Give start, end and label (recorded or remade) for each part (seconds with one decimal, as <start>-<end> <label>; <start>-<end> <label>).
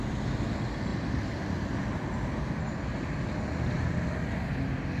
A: 0.0-5.0 recorded